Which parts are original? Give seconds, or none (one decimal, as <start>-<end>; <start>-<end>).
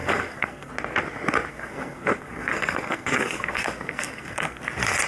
0.7-1.5; 4.6-5.1